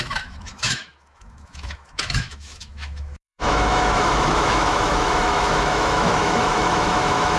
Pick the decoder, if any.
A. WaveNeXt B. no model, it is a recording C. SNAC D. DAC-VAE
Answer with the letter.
D